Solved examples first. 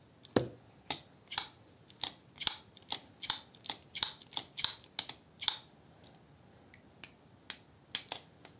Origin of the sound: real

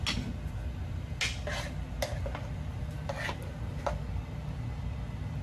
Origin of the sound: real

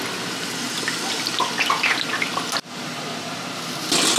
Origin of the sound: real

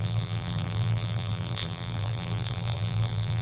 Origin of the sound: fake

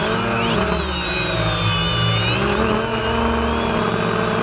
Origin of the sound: real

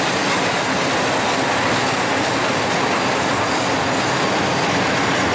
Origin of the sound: real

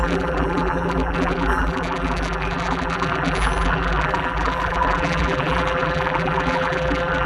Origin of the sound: fake